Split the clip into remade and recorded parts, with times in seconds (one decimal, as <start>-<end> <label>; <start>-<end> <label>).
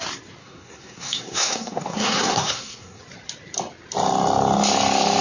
0.0-0.4 recorded; 0.4-3.0 remade; 3.0-5.2 recorded